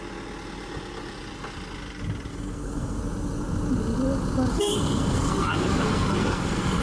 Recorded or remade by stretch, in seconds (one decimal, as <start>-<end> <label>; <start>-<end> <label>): 0.0-2.3 recorded; 2.3-3.0 remade; 3.0-4.5 recorded; 4.5-6.8 remade